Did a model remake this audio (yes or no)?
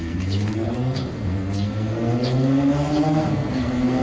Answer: yes